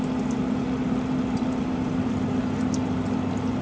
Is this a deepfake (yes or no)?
yes